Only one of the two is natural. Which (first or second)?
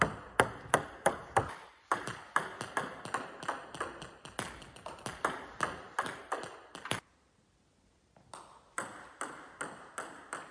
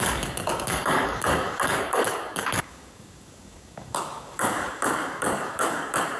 first